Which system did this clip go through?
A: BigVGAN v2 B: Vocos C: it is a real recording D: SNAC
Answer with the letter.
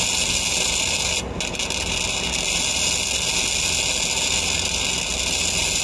C